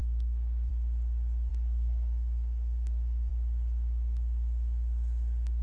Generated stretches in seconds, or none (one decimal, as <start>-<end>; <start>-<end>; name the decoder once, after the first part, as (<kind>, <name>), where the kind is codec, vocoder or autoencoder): 0.0-0.7 (codec, SNAC); 1.5-3.3